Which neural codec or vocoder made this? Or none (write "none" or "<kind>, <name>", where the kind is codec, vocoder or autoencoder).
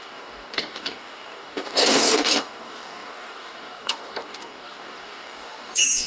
codec, DAC